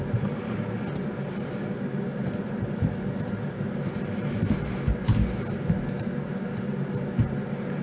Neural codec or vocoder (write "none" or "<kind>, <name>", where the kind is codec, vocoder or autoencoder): none